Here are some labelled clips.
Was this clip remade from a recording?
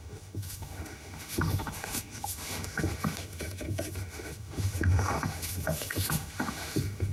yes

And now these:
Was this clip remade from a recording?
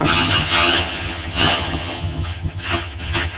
yes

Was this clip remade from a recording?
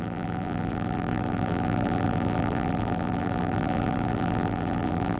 yes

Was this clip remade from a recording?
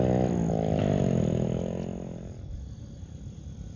no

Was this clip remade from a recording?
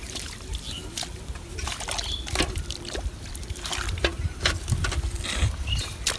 no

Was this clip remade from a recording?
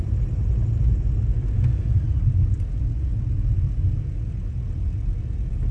no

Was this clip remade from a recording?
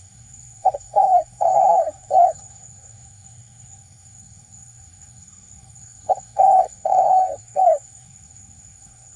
yes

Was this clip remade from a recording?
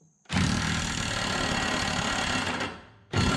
no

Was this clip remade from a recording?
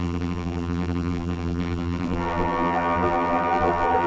yes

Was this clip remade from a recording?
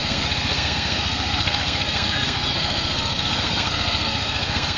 yes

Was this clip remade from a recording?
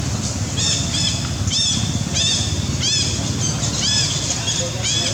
no